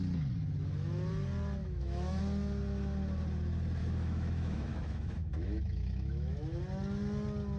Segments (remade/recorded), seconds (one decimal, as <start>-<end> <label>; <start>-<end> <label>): 0.0-1.6 recorded; 1.6-2.2 remade; 2.2-3.8 recorded; 3.8-6.6 remade; 6.6-7.6 recorded